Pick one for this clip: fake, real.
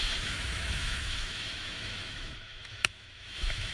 fake